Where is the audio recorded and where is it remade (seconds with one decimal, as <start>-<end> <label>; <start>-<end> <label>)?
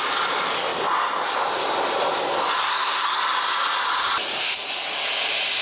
0.0-2.6 recorded; 2.6-3.2 remade; 3.2-5.6 recorded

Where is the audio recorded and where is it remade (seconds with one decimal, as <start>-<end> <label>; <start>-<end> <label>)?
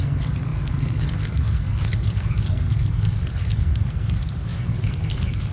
0.0-5.5 remade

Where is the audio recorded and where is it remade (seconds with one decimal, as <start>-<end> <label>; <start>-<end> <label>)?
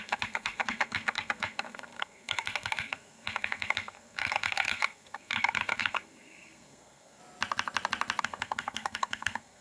0.0-7.2 remade; 7.2-8.2 recorded; 8.2-9.6 remade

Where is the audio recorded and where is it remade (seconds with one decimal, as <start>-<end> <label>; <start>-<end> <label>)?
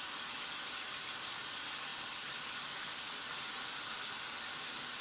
0.0-5.0 recorded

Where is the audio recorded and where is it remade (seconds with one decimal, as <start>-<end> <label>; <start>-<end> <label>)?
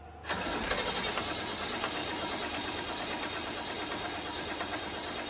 0.0-5.3 recorded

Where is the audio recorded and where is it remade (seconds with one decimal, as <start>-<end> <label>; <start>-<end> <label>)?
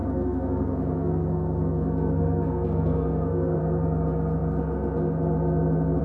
0.0-3.6 remade; 3.6-6.0 recorded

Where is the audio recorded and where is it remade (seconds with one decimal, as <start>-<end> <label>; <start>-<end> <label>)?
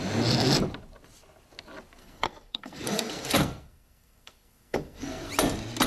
0.0-2.0 recorded; 2.0-5.3 remade; 5.3-5.9 recorded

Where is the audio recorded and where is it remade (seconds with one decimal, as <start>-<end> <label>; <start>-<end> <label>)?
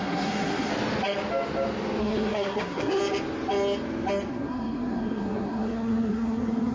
0.0-0.7 remade; 0.7-2.0 recorded; 2.0-3.0 remade; 3.0-4.3 recorded; 4.3-6.7 remade